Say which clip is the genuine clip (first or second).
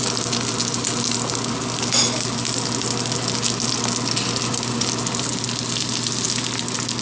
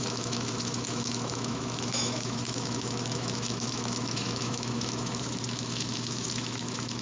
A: first